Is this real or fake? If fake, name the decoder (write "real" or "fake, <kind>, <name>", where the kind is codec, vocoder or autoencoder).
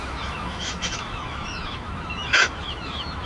fake, autoencoder, DAC-VAE